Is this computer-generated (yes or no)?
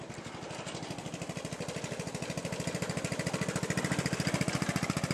no